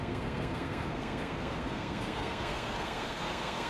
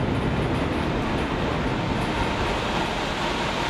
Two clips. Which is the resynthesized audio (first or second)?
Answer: first